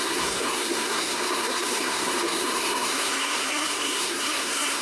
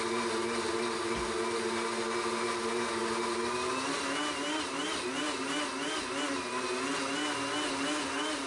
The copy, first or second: first